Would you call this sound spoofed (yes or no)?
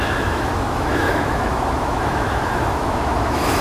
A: yes